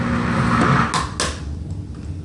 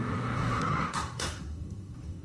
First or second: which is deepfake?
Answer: second